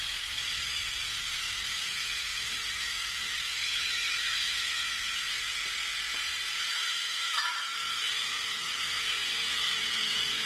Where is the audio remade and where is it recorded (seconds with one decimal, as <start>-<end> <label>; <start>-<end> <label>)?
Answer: 0.0-5.6 remade; 5.6-6.7 recorded; 6.7-10.5 remade